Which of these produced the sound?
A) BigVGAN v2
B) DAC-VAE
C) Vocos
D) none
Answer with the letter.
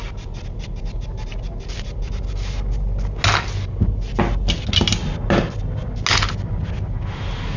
D